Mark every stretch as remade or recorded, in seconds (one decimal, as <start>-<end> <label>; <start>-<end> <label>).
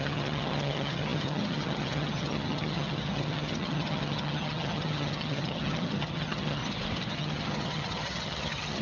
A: 0.0-6.6 remade; 6.6-7.1 recorded; 7.1-8.8 remade